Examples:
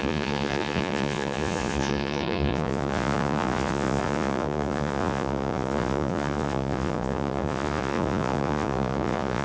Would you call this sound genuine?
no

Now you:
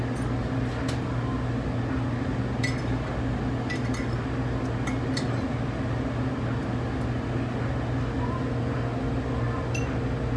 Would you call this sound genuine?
yes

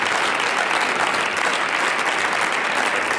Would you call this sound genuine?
yes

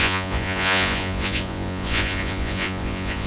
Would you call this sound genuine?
no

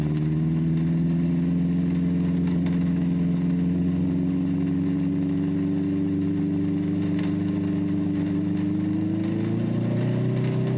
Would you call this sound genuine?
yes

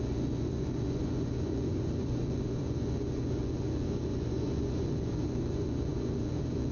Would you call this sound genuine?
no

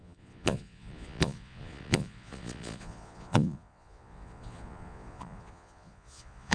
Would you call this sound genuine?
no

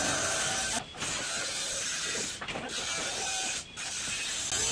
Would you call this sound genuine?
yes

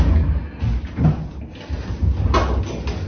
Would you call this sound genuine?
yes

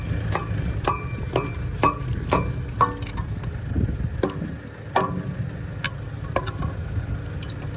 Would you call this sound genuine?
yes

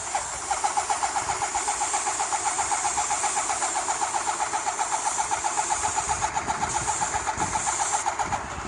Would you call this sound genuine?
yes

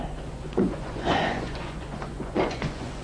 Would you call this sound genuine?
no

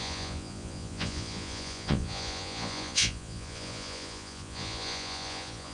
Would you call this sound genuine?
no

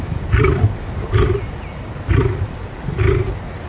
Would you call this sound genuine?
yes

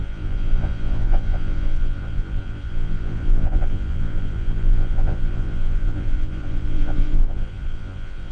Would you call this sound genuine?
no